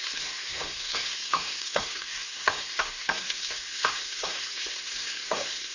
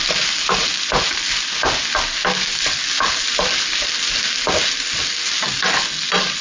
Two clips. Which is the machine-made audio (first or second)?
first